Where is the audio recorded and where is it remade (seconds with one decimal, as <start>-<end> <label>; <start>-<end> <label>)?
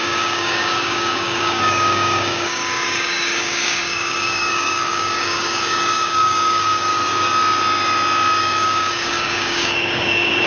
0.0-6.9 remade; 6.9-8.4 recorded; 8.4-10.5 remade